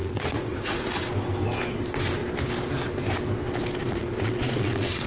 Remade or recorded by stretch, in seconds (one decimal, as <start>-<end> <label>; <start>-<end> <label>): 0.0-0.8 remade; 0.8-3.8 recorded; 3.8-5.1 remade

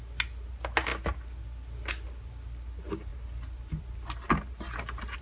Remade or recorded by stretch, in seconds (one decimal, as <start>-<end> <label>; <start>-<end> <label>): 0.0-5.2 recorded